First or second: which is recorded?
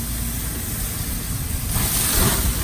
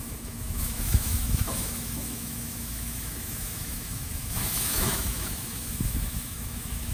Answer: first